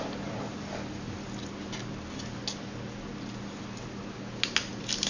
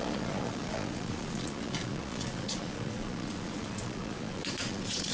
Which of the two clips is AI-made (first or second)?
second